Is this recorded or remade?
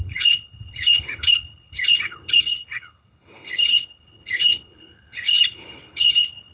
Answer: remade